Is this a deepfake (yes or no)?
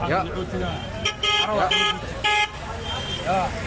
no